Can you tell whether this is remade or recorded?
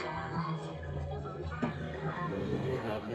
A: remade